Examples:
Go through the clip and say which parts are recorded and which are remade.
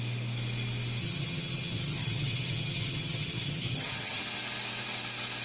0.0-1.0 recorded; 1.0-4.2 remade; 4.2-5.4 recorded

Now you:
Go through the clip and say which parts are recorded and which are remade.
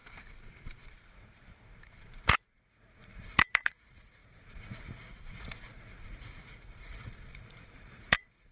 0.0-0.9 recorded; 0.9-8.5 remade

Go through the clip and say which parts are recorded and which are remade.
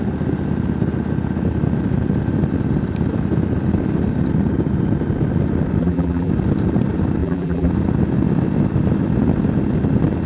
0.0-5.8 recorded; 5.8-6.3 remade; 6.3-7.2 recorded; 7.2-7.7 remade; 7.7-10.3 recorded